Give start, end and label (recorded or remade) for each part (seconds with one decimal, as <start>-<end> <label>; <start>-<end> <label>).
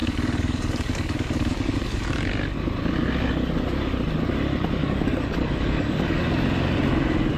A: 0.0-2.0 remade; 2.0-4.8 recorded; 4.8-6.2 remade; 6.2-7.4 recorded